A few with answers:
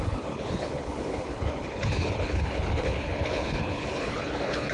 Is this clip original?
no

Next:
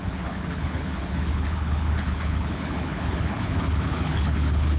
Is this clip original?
no